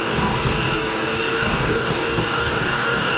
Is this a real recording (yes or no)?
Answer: no